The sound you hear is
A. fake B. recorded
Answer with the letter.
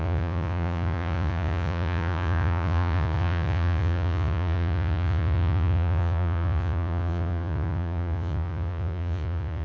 A